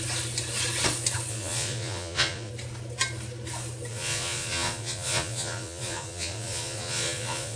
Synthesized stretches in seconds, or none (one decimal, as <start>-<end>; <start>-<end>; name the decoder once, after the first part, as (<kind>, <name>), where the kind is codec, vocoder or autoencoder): 1.3-2.5 (vocoder, Vocos); 3.9-7.6